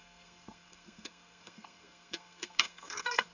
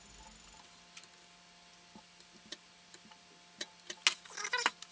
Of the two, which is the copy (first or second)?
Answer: first